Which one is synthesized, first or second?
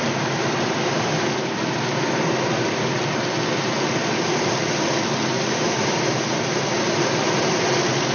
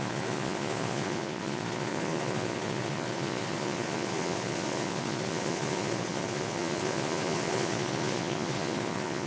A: second